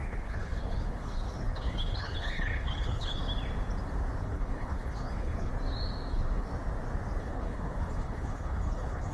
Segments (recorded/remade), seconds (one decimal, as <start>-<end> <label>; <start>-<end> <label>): 0.0-3.2 remade; 3.2-4.2 recorded; 4.2-5.5 remade; 5.5-6.1 recorded; 6.1-6.5 remade; 6.5-7.2 recorded; 7.2-9.1 remade